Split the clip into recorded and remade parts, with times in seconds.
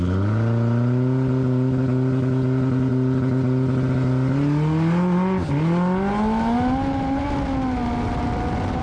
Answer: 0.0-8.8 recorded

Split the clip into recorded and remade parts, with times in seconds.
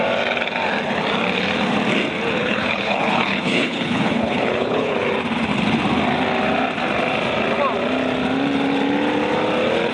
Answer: 0.0-2.4 recorded; 2.4-5.1 remade; 5.1-9.9 recorded